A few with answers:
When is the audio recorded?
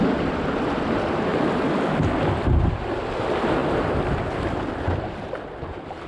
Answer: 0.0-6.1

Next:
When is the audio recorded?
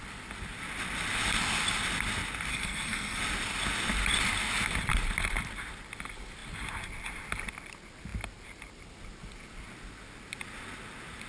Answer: 0.0-2.5; 3.2-11.3